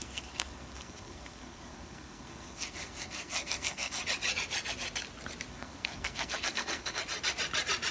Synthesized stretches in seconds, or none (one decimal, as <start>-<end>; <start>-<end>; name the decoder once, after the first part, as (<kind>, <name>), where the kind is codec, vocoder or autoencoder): 0.0-4.0 (codec, SNAC); 5.5-7.0